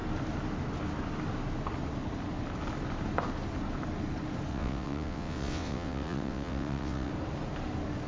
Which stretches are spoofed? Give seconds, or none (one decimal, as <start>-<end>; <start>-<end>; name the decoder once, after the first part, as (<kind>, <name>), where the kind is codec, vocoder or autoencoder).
4.5-7.1 (vocoder, WaveNeXt)